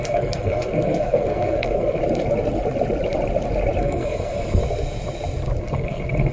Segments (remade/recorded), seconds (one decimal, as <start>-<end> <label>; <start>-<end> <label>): 0.0-2.0 remade; 2.0-3.8 recorded; 3.8-4.6 remade; 4.6-5.6 recorded; 5.6-6.3 remade